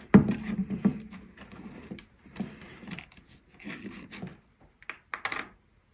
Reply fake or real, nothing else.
real